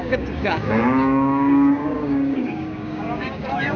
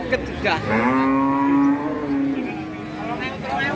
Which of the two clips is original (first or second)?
second